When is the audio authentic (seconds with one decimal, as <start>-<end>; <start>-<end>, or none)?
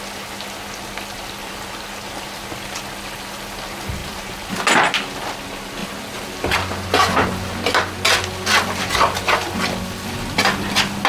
0.0-1.4; 2.4-4.0; 4.5-11.1